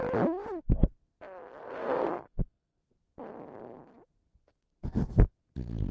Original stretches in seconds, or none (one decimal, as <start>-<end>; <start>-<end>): 0.0-1.6; 3.0-4.4; 5.3-5.9